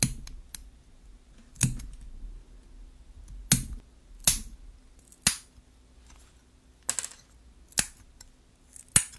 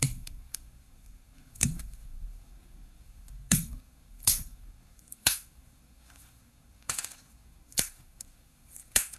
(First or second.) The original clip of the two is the first